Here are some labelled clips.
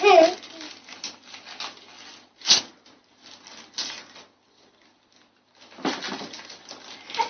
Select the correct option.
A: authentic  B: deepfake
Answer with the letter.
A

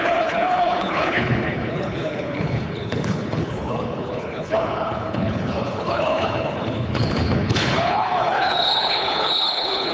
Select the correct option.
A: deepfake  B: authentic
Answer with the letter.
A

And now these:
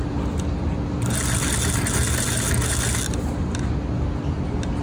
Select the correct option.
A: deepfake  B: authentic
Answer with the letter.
B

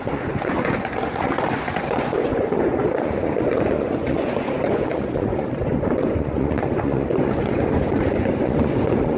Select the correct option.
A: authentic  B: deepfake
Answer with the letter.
B